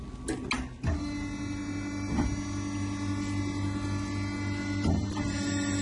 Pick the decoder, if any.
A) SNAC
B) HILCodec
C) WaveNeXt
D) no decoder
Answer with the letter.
D